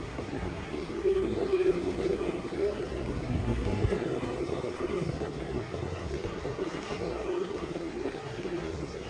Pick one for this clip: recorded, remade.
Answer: remade